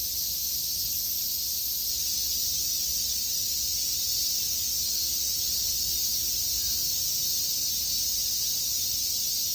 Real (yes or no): yes